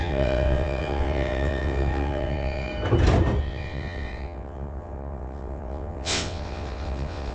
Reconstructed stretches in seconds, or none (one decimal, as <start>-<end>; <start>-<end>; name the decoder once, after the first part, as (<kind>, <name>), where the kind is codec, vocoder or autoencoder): 0.0-2.7 (vocoder, WaveNeXt); 3.4-7.3